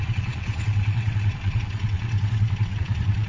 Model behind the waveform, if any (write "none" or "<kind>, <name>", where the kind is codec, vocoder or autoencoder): vocoder, WaveNeXt